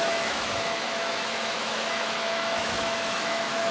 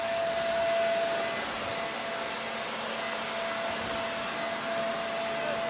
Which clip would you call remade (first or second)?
first